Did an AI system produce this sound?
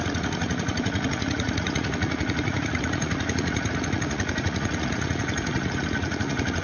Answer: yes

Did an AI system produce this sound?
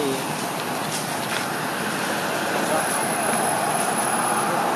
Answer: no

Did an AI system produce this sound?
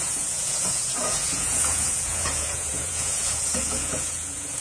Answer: yes